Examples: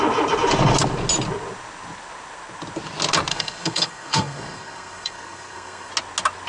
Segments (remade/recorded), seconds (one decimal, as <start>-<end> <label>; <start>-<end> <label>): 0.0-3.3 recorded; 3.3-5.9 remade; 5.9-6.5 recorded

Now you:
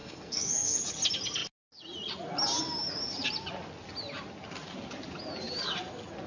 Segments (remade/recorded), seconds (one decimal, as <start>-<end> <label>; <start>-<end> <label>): 0.0-0.8 remade; 0.8-6.3 recorded

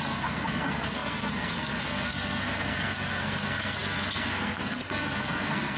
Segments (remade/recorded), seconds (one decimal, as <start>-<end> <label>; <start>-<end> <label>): 0.0-5.8 remade

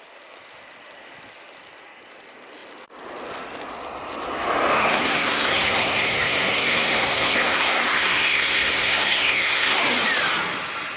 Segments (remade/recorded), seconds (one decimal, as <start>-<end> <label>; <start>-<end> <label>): 0.0-4.8 recorded; 4.8-9.8 remade; 9.8-11.0 recorded

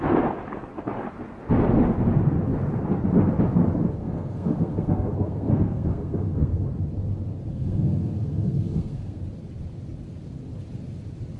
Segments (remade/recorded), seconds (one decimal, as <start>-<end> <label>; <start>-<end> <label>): 0.0-4.0 recorded; 4.0-6.6 remade; 6.6-7.5 recorded; 7.5-9.2 remade; 9.2-11.4 recorded

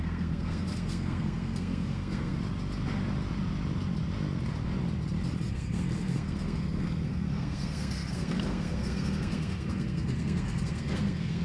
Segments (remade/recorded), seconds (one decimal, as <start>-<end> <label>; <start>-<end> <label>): 0.0-2.4 remade; 2.4-5.5 recorded; 5.5-11.4 remade

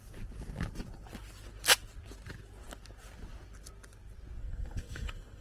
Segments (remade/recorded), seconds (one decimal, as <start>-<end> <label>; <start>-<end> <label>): 0.0-4.4 recorded; 4.4-5.4 remade